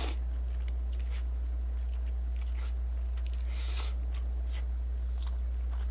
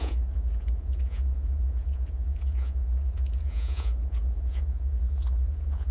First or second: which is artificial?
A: second